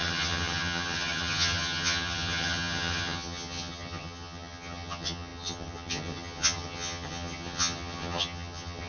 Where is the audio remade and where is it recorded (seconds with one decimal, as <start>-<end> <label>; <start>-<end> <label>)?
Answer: 0.0-8.9 remade